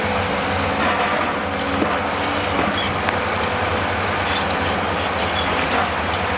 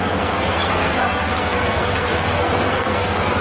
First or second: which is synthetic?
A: second